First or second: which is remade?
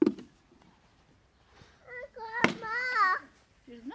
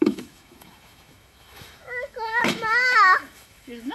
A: second